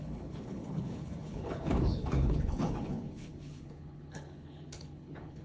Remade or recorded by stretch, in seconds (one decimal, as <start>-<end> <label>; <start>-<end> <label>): 0.0-5.4 remade